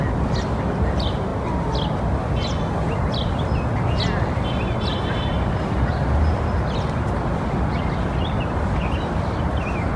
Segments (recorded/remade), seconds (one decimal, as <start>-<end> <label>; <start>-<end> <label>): 0.0-10.0 recorded